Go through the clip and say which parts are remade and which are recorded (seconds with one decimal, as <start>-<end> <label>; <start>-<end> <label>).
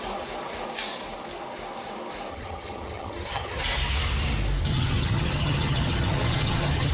0.0-2.3 recorded; 2.3-3.6 remade; 3.6-4.7 recorded; 4.7-6.9 remade